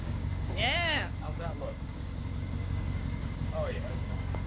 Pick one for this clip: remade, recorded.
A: remade